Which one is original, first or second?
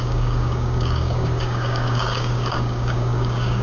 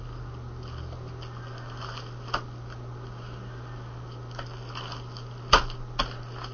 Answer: second